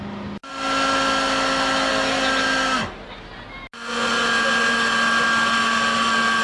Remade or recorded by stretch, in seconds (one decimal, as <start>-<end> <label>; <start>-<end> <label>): 0.0-6.4 recorded